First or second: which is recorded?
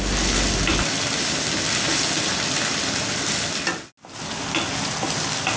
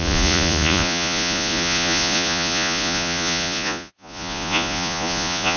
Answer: first